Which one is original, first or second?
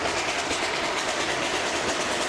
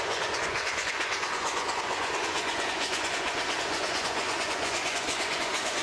first